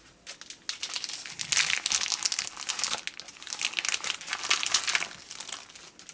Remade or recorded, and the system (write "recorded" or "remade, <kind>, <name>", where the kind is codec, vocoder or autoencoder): recorded